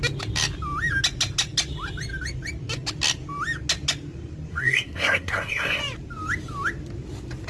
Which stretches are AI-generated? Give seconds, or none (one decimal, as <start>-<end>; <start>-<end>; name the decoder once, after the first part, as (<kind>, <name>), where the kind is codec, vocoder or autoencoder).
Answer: 4.5-5.8 (codec, SNAC)